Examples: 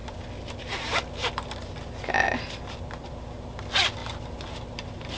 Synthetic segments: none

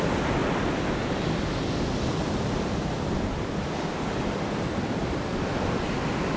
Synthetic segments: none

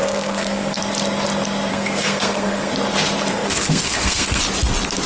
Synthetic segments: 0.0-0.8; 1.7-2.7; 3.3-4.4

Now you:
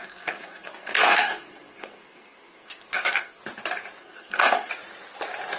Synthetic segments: 0.0-3.4; 4.0-4.7

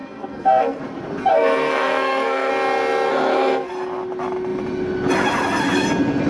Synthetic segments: 0.0-0.8; 1.3-2.5; 3.1-3.7

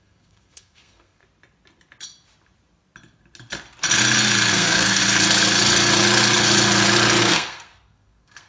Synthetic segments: 0.0-1.2; 4.5-5.0; 7.2-8.5

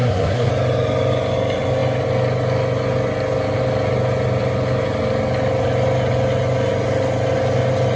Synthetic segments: 0.0-0.5

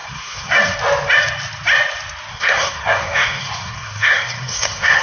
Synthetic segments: 0.0-0.5; 2.3-5.0